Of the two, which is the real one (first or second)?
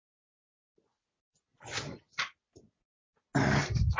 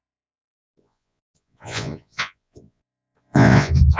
first